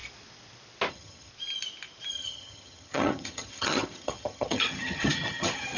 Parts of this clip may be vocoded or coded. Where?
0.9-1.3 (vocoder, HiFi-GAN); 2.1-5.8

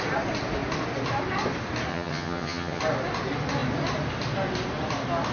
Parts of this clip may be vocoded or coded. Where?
1.9-2.8 (vocoder, HiFi-GAN)

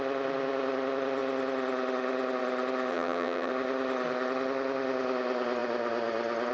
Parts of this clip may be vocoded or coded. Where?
2.9-3.5 (vocoder, HiFi-GAN)

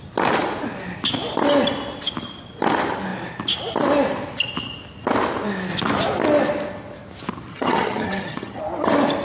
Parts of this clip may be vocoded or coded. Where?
7.5-8.6 (vocoder, HiFi-GAN)